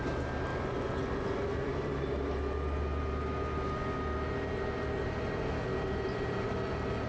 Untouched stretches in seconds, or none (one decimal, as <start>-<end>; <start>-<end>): 0.0-0.5; 1.9-5.7